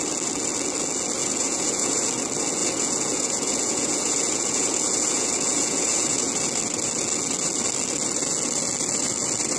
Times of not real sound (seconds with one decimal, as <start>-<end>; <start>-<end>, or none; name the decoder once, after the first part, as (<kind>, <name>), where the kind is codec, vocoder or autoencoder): 1.2-2.1 (vocoder, Vocos); 2.6-6.3